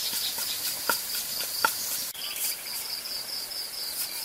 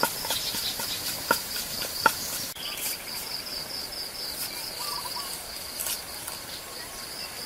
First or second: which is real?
second